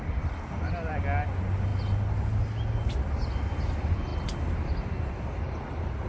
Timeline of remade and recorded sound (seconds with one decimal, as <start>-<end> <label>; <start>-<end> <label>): 0.0-6.1 recorded